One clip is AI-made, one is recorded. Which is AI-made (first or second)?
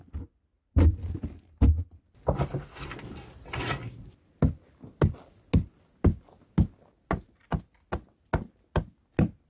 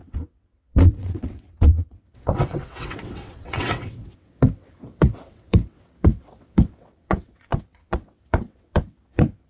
second